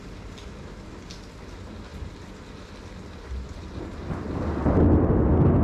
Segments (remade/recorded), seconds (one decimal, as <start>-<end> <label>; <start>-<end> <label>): 0.0-5.6 recorded